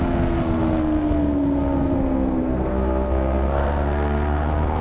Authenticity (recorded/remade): remade